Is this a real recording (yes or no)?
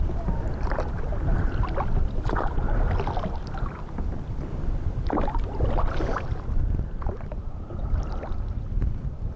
no